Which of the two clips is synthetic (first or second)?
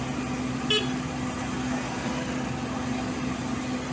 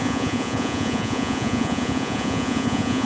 second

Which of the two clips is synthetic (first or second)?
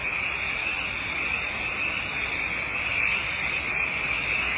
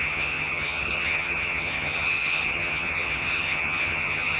second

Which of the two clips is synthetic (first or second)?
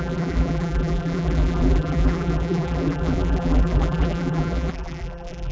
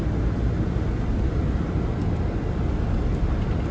first